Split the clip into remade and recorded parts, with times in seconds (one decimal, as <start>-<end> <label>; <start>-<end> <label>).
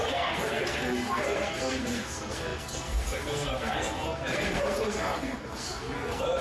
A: 0.0-6.4 remade